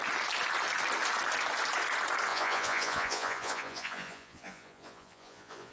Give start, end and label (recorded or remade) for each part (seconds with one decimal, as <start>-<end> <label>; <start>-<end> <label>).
0.0-2.3 recorded; 2.3-5.7 remade